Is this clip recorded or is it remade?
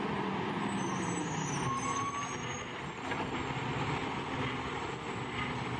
recorded